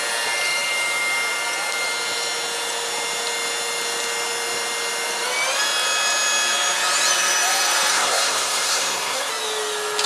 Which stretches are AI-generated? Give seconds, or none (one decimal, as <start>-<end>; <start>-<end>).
7.9-9.3